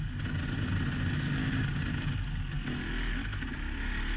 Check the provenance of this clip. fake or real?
real